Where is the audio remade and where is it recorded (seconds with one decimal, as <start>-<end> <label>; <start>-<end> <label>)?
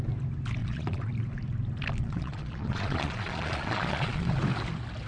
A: 0.0-0.6 recorded; 0.6-1.1 remade; 1.1-2.0 recorded; 2.0-4.4 remade; 4.4-5.1 recorded